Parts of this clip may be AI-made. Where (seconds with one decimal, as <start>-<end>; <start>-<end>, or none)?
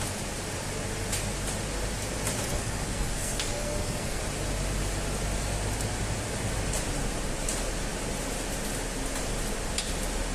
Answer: 2.5-4.2